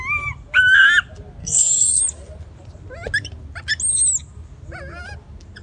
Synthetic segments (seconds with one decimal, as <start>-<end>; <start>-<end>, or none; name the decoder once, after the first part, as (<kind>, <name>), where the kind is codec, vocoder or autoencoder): 1.4-2.0 (codec, SNAC)